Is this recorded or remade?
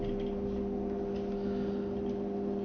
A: recorded